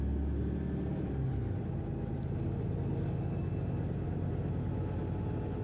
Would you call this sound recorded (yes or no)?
yes